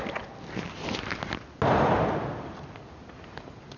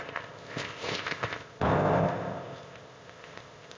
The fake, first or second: second